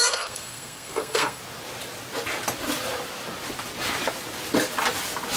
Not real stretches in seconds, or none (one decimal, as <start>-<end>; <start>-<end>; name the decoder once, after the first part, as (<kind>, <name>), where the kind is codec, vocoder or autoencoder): 0.0-1.4 (codec, SNAC)